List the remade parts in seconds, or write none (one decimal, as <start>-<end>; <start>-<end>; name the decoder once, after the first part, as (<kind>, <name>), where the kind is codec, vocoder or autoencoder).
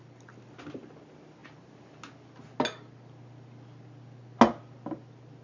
none